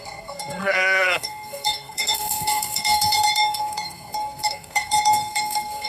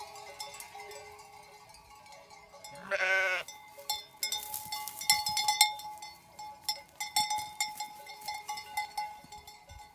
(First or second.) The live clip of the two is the second